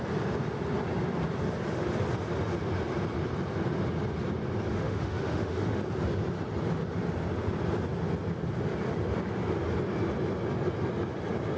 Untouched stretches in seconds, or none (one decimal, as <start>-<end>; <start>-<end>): 0.0-4.7; 5.8-11.6